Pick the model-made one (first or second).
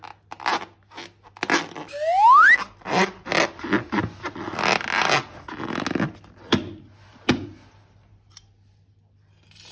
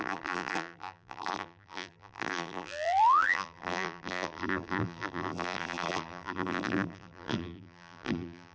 second